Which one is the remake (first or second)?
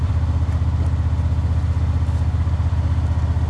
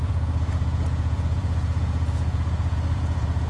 second